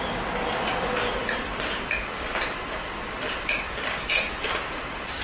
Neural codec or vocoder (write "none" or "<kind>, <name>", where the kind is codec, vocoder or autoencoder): vocoder, BigVGAN v2